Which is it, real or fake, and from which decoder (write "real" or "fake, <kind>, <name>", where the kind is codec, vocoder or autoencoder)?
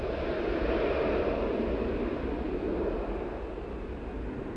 real